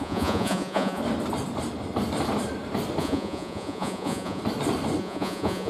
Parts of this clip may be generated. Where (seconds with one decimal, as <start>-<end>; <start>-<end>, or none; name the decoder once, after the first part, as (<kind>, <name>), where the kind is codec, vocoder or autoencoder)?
0.0-1.0 (vocoder, Vocos); 3.0-4.4; 5.0-5.7